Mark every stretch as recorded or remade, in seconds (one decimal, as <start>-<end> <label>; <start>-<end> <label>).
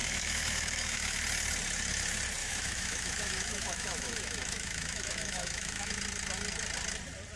0.0-1.2 remade; 1.2-2.4 recorded; 2.4-5.9 remade; 5.9-7.4 recorded